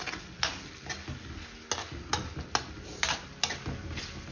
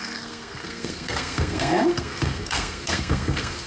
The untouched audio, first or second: first